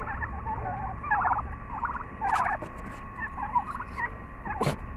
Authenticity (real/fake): real